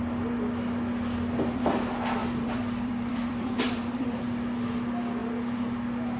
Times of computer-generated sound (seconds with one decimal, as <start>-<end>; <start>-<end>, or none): 2.2-4.2